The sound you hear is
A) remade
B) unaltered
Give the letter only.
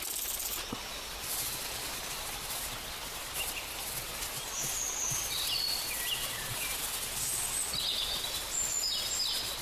B